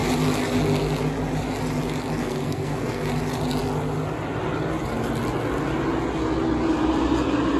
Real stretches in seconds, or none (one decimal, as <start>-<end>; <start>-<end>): 0.0-2.2; 3.1-7.6